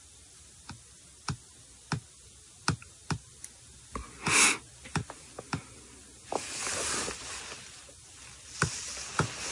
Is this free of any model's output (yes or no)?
yes